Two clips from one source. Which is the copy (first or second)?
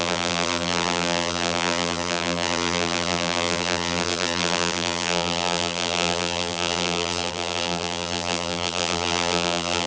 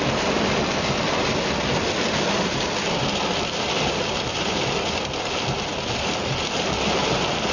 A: first